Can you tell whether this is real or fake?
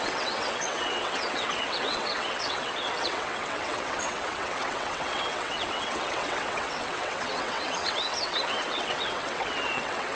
fake